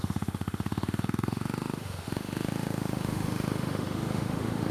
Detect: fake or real fake